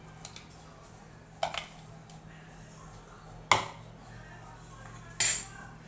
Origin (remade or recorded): recorded